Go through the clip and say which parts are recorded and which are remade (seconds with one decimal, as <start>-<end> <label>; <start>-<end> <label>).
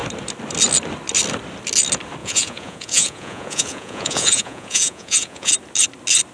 0.0-2.2 recorded; 2.2-5.5 remade; 5.5-6.3 recorded